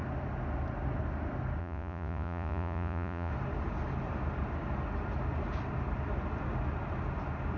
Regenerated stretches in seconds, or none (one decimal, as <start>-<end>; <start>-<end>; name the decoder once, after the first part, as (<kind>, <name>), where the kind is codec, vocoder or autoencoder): 1.6-3.3 (vocoder, Vocos)